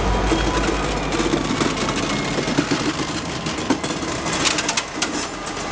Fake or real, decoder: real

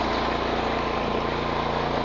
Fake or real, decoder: real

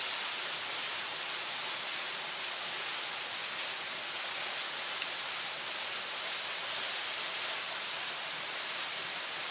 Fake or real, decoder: real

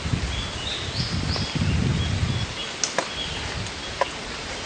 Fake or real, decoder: real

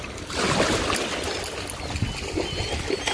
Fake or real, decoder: real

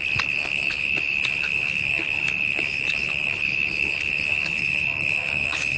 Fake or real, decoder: fake, codec, HILCodec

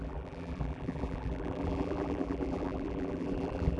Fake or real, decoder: fake, vocoder, BigVGAN v2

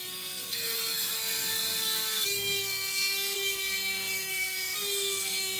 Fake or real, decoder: fake, codec, SNAC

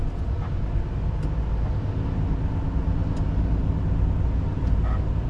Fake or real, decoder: real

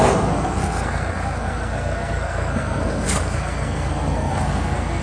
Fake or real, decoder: fake, codec, SNAC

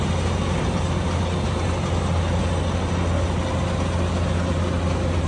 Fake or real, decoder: real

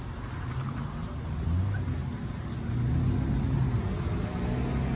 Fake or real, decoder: real